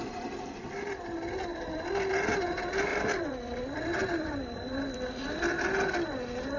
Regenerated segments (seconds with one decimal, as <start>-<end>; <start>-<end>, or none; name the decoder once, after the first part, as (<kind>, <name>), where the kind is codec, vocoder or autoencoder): 1.5-2.1 (vocoder, BigVGAN v2); 2.9-5.4